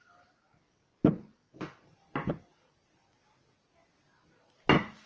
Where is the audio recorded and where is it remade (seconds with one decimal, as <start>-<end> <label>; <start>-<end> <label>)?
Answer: 0.0-5.1 recorded